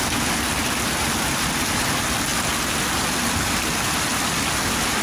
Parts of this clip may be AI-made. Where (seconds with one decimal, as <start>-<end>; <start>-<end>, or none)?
none